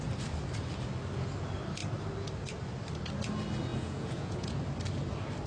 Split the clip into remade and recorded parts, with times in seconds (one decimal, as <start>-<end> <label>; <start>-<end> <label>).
0.0-3.7 recorded; 3.7-4.6 remade; 4.6-5.5 recorded